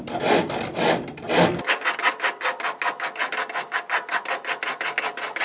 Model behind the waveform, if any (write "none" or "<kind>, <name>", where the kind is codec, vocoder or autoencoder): none